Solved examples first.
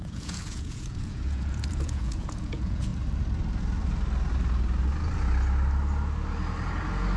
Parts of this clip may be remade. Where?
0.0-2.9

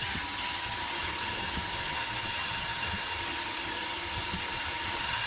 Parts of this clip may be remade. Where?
0.0-5.3

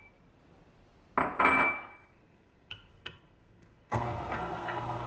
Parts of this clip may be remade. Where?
1.9-5.1

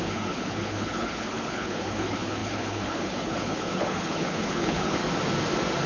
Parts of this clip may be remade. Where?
0.0-5.0

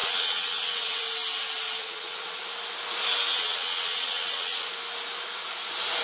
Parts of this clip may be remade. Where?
0.0-1.0; 1.8-2.4; 3.3-4.7

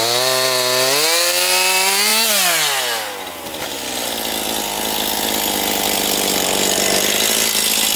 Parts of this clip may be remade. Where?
none

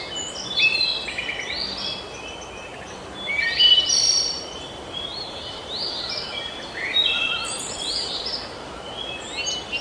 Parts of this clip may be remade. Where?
2.7-6.9

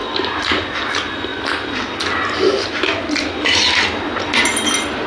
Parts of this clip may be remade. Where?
none